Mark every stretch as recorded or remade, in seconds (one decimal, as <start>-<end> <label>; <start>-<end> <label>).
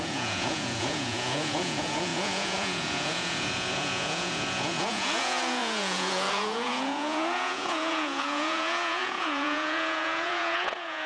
0.0-11.1 remade